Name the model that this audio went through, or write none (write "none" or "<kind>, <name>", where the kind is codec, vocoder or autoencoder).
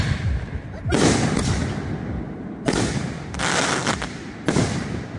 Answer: none